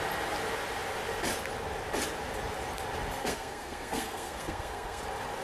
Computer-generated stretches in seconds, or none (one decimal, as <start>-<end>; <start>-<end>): 3.2-5.0